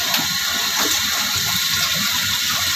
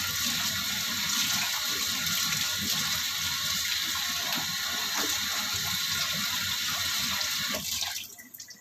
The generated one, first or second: first